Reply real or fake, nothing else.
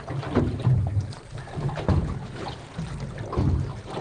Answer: real